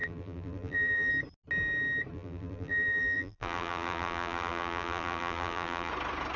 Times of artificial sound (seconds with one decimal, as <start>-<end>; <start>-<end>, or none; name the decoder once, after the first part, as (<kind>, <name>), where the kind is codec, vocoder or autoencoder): 0.0-1.1 (vocoder, BigVGAN v2); 2.1-5.9